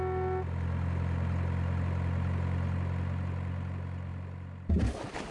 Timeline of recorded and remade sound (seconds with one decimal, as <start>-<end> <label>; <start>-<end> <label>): 0.0-5.3 recorded

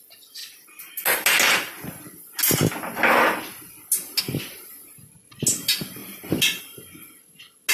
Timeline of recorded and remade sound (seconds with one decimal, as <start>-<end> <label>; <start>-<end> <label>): 0.0-7.7 recorded

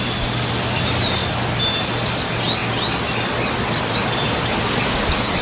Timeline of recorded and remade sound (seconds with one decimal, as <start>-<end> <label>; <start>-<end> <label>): 0.0-5.4 recorded

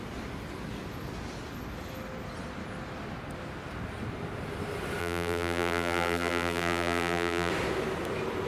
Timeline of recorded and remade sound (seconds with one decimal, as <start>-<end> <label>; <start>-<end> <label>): 0.0-5.0 recorded; 5.0-7.5 remade; 7.5-8.5 recorded

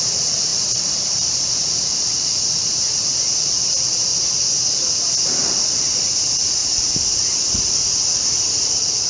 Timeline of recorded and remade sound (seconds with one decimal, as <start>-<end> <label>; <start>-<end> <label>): 0.0-4.1 remade; 4.1-5.0 recorded; 5.0-9.1 remade